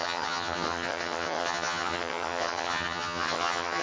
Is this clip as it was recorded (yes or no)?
no